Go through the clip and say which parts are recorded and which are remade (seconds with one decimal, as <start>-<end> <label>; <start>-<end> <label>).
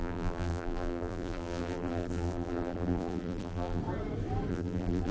0.0-3.8 remade; 3.8-4.5 recorded; 4.5-5.1 remade